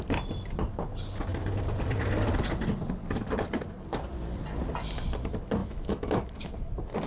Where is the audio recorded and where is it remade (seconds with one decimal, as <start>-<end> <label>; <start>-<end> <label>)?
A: 0.0-5.6 recorded; 5.6-6.5 remade; 6.5-7.1 recorded